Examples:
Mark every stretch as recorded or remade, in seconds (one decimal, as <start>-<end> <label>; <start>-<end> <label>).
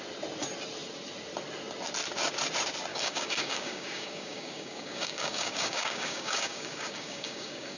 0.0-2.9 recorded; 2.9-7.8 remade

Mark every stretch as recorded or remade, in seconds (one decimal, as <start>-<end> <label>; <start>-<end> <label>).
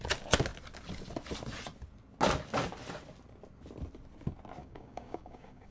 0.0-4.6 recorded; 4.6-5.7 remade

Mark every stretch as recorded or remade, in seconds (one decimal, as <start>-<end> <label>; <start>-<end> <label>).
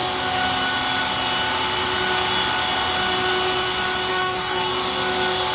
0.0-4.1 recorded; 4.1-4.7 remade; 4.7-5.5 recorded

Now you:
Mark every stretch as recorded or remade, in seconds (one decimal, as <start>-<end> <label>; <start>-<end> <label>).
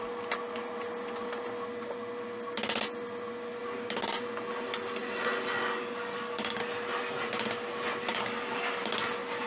0.0-5.6 recorded; 5.6-6.6 remade; 6.6-8.1 recorded; 8.1-8.8 remade; 8.8-9.5 recorded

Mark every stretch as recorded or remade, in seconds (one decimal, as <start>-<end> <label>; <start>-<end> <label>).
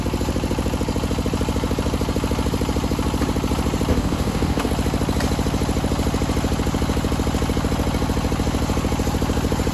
0.0-3.9 recorded; 3.9-4.7 remade; 4.7-9.7 recorded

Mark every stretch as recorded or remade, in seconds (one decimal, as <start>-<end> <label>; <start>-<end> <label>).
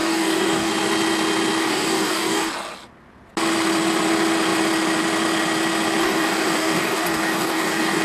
0.0-0.7 remade; 0.7-1.6 recorded; 1.6-2.5 remade; 2.5-6.0 recorded; 6.0-8.0 remade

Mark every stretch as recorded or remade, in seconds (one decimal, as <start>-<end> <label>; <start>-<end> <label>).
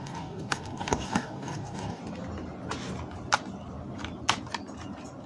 0.0-2.0 remade; 2.0-5.3 recorded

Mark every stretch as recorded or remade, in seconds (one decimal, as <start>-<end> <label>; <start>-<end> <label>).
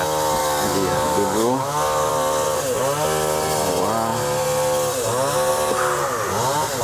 0.0-0.4 recorded; 0.4-2.1 remade; 2.1-6.8 recorded